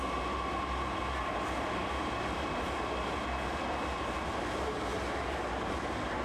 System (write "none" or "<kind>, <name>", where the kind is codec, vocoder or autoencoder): none